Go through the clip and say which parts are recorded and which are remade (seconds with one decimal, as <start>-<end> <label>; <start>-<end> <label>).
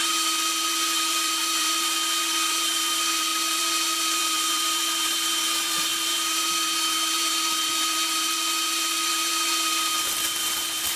0.0-11.0 remade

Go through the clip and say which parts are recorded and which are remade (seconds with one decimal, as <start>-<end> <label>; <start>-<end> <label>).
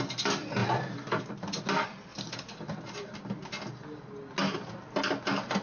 0.0-0.6 recorded; 0.6-1.6 remade; 1.6-2.1 recorded; 2.1-3.3 remade; 3.3-5.6 recorded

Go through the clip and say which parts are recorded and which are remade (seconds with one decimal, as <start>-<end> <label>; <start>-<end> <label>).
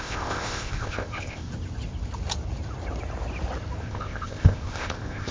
0.0-1.5 remade; 1.5-3.8 recorded; 3.8-5.3 remade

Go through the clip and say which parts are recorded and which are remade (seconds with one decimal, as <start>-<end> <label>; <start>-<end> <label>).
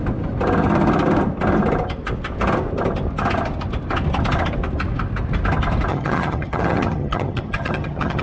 0.0-5.9 recorded; 5.9-8.2 remade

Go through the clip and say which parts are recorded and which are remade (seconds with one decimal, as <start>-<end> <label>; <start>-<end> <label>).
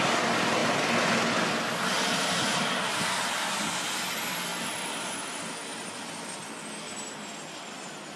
0.0-8.2 recorded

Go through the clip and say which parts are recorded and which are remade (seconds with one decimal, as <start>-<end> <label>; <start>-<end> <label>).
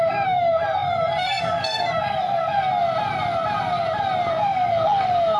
0.0-2.7 remade; 2.7-4.3 recorded; 4.3-5.4 remade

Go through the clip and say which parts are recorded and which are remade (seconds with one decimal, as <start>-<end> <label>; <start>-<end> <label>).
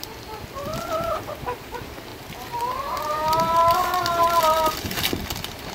0.0-0.7 recorded; 0.7-1.3 remade; 1.3-2.1 recorded; 2.1-5.7 remade